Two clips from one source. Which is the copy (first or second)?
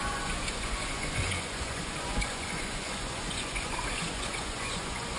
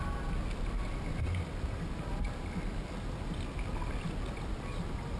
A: first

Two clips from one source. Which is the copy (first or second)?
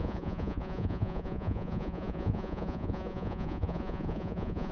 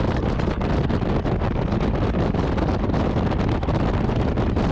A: first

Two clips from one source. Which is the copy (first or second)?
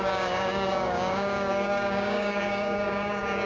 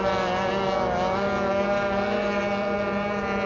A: first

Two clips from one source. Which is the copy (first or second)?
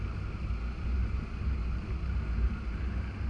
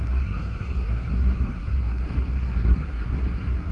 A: second